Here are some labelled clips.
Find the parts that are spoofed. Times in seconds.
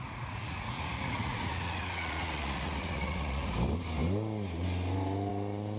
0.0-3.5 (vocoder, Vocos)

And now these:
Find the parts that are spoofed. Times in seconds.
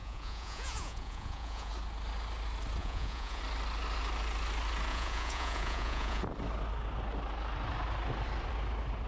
0.0-1.7 (vocoder, Vocos); 2.8-3.4; 4.9-6.2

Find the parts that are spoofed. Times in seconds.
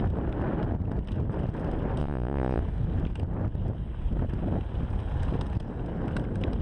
2.0-2.6 (vocoder, Vocos)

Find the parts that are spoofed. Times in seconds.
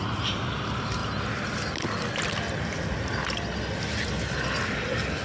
none